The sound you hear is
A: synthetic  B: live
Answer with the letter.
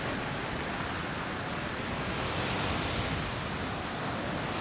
B